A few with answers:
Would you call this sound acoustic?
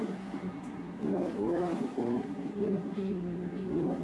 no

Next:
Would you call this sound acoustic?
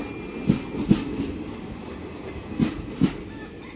yes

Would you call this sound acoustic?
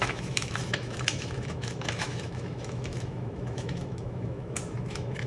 no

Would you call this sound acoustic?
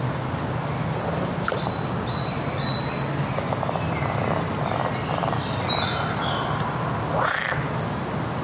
yes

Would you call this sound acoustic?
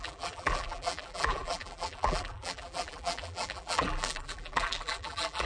no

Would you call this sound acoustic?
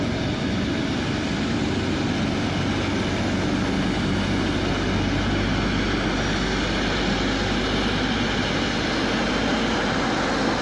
yes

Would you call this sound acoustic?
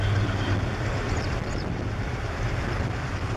no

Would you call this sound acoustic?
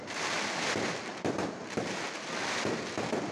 yes